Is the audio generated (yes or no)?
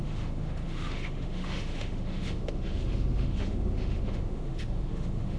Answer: yes